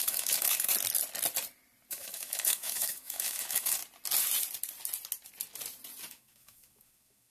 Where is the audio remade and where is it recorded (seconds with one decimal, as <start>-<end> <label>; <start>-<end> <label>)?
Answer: 0.0-0.7 remade; 0.7-1.9 recorded; 1.9-3.8 remade; 3.8-6.1 recorded; 6.1-7.3 remade

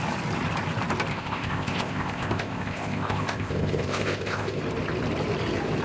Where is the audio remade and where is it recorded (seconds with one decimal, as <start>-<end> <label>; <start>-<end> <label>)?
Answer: 0.0-1.1 recorded; 1.1-4.6 remade; 4.6-5.8 recorded